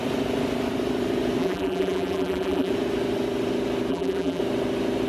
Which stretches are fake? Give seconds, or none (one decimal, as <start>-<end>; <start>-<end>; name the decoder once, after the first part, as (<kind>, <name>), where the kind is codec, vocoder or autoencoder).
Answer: 1.4-2.7 (vocoder, BigVGAN v2); 3.9-4.4